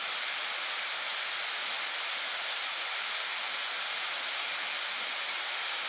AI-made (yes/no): no